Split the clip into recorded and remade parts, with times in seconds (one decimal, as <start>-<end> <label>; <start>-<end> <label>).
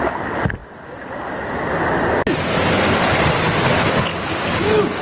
0.0-4.1 recorded; 4.1-5.0 remade